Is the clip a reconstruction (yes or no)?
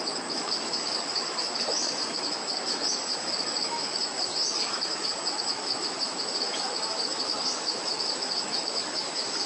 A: yes